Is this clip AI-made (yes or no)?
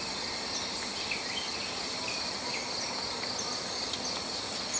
no